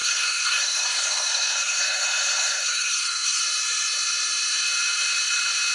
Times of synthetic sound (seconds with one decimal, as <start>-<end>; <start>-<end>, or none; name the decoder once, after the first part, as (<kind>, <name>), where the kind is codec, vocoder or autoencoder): 0.0-3.4 (codec, SNAC)